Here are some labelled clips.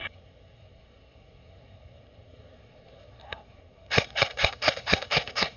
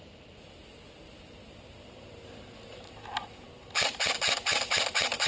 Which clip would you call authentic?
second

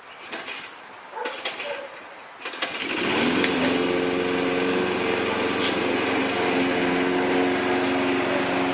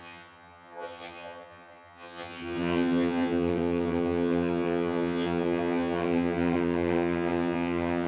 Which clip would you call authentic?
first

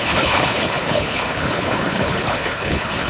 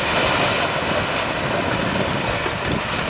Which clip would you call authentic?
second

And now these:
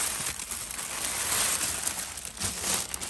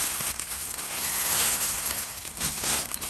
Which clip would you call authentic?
first